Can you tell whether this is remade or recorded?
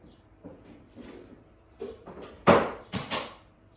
remade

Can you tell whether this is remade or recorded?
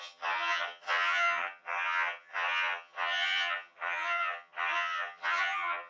remade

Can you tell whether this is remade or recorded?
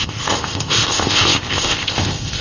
remade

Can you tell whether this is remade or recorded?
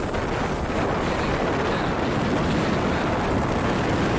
recorded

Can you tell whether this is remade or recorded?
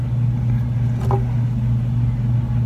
recorded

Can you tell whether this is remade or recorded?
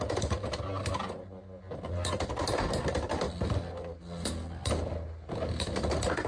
recorded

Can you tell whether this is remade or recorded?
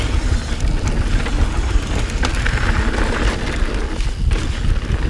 recorded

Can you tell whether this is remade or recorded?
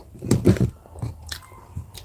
recorded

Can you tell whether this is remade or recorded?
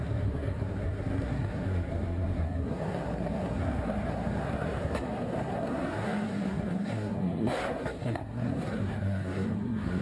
remade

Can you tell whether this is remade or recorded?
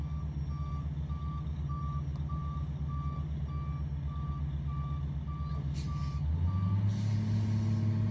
recorded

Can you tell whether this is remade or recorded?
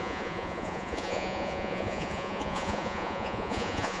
remade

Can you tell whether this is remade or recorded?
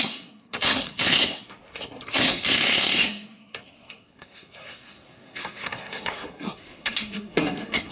remade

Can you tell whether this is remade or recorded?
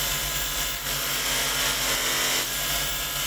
recorded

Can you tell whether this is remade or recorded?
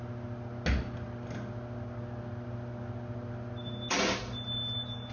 recorded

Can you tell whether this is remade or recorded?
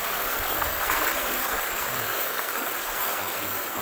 remade